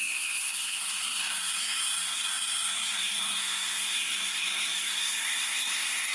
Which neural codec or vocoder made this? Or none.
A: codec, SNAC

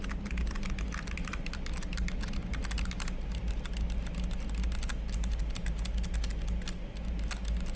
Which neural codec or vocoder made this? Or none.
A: none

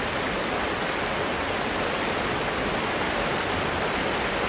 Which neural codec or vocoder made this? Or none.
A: none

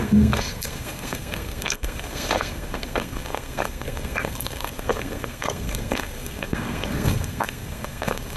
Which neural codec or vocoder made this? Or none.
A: codec, SNAC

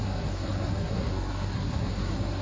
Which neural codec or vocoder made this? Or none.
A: codec, SNAC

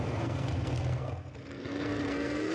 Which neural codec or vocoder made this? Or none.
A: codec, SNAC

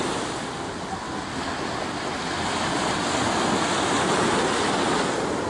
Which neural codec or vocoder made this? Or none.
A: none